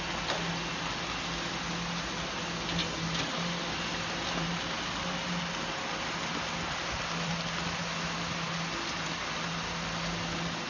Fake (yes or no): no